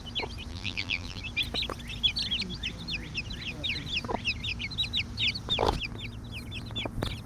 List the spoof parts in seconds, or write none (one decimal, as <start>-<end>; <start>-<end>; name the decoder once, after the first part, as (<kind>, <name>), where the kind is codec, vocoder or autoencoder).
0.5-1.2 (vocoder, BigVGAN v2)